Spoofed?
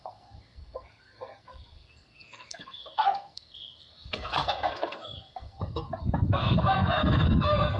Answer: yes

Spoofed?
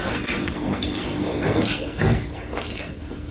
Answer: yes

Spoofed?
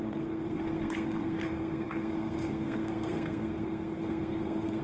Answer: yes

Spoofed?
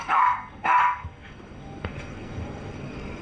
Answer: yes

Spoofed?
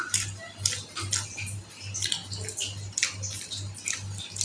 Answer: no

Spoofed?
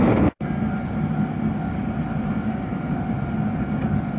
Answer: no